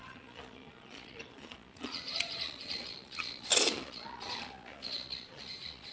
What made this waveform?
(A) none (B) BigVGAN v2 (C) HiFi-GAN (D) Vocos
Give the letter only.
D